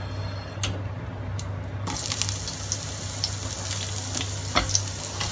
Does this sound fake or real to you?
real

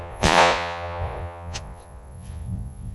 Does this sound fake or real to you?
fake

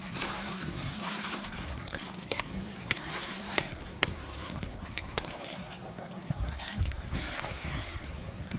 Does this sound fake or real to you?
fake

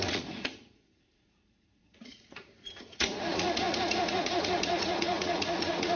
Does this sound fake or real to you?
fake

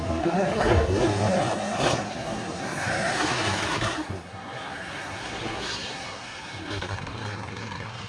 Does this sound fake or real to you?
fake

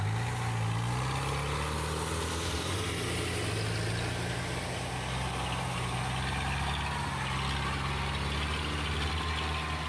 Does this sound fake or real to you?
real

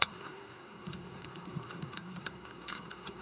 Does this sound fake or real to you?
fake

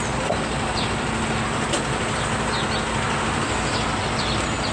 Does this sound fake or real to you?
real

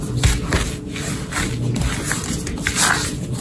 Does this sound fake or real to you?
real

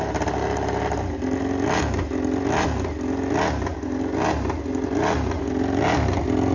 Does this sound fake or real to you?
real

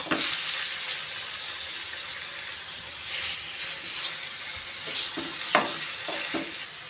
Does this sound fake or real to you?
real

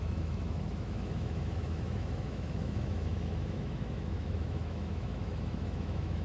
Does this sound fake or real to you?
fake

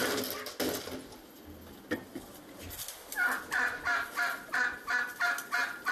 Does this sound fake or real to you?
real